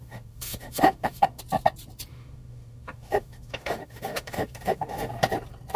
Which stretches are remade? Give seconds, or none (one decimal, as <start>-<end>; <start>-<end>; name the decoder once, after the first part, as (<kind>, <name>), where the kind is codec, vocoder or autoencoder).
0.0-1.4 (autoencoder, DAC-VAE); 2.1-5.1